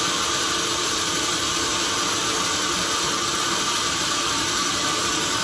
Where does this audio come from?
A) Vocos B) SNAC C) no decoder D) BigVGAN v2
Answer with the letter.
D